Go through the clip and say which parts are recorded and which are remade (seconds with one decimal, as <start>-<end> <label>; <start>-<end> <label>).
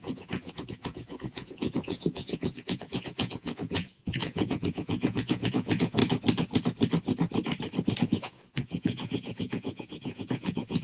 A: 0.0-6.0 remade; 6.0-8.0 recorded; 8.0-10.8 remade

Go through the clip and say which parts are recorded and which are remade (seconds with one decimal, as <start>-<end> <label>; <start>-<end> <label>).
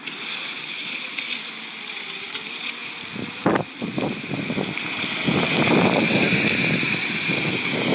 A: 0.0-7.9 recorded